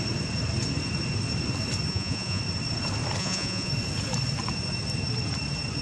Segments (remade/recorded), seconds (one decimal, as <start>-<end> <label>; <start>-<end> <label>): 0.0-1.9 recorded; 1.9-2.4 remade; 2.4-3.2 recorded; 3.2-3.7 remade; 3.7-5.8 recorded